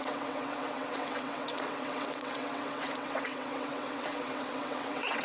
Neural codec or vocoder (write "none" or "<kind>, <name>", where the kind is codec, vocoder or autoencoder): vocoder, WaveNeXt